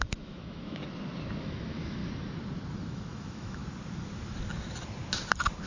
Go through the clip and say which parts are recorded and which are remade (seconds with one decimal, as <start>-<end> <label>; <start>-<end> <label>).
0.0-0.8 remade; 0.8-1.4 recorded; 1.4-2.0 remade; 2.0-2.9 recorded; 2.9-3.6 remade; 3.6-5.7 recorded